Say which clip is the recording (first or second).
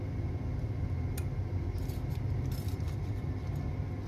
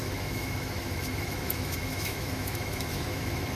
first